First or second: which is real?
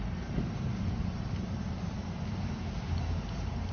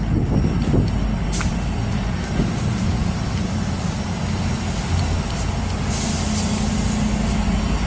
second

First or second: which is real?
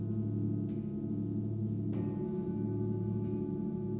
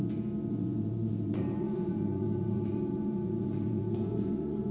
first